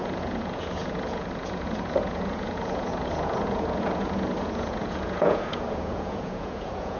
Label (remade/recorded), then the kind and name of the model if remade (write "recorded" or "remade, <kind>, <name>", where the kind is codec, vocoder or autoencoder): remade, vocoder, Vocos